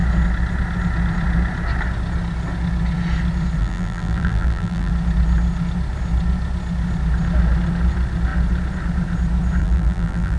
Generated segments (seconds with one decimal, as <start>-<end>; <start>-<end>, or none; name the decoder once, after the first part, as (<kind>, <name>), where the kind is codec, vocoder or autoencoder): 3.6-4.9 (vocoder, BigVGAN v2); 9.6-10.4